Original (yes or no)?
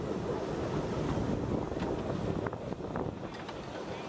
yes